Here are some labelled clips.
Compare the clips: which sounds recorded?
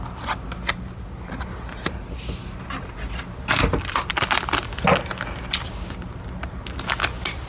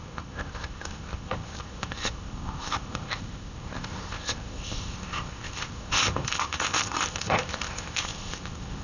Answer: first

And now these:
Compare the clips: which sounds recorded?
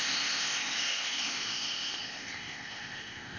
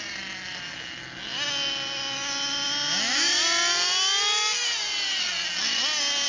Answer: second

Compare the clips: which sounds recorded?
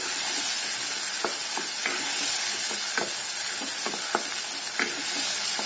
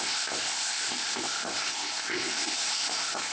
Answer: first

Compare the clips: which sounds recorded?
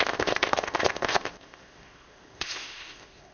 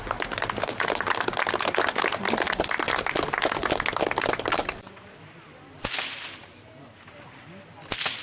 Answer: second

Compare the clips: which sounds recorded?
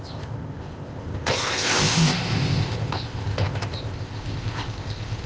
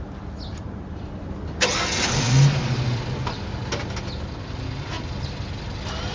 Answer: second